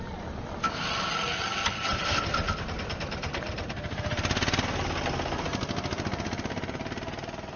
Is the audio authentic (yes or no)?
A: yes